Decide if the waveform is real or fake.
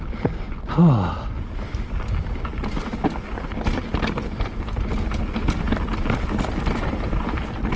real